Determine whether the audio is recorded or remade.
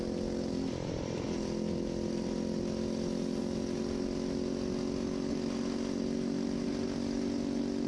recorded